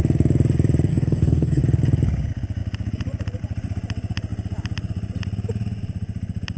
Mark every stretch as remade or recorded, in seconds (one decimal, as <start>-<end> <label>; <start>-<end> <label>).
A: 0.0-0.9 recorded; 0.9-1.6 remade; 1.6-6.6 recorded